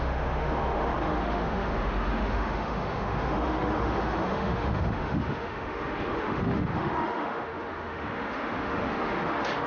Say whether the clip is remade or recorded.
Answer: remade